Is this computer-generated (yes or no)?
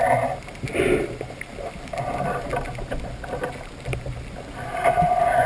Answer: no